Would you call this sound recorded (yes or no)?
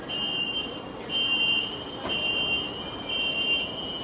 no